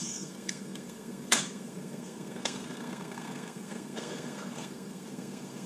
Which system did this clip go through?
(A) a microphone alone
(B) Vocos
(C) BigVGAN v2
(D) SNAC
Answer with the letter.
D